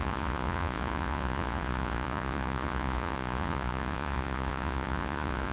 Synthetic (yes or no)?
yes